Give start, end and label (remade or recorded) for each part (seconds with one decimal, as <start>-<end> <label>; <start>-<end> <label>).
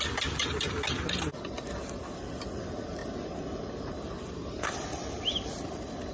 0.0-6.1 recorded